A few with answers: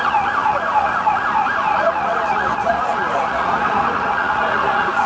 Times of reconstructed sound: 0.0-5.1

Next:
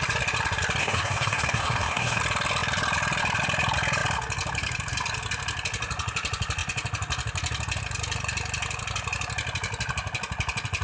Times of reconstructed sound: 0.8-2.2